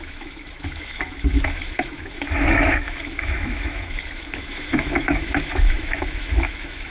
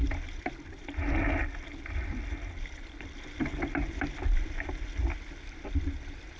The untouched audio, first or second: second